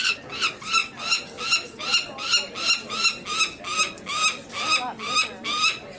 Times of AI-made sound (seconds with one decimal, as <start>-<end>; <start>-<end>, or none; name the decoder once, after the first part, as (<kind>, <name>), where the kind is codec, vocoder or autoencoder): none